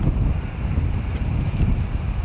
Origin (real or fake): fake